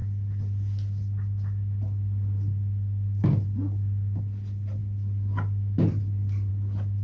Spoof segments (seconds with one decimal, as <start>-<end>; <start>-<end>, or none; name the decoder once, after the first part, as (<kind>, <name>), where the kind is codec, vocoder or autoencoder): none